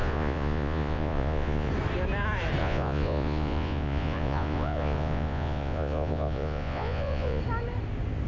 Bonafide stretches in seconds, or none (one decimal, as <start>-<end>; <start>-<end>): 1.7-2.6; 7.4-8.3